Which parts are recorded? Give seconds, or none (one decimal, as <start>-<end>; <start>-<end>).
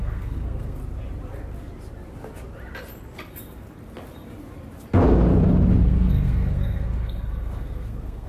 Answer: 0.8-5.8